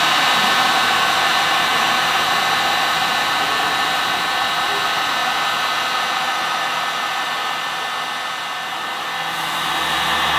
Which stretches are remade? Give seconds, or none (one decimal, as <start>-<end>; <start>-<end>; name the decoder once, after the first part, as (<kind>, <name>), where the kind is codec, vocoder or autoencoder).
1.7-3.8 (vocoder, BigVGAN v2)